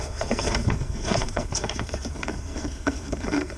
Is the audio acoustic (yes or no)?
no